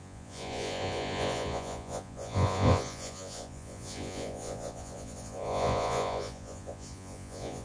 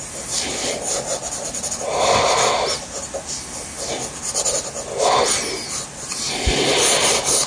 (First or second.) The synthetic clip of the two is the first